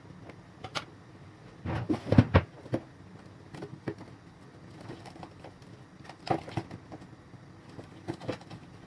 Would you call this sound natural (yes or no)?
yes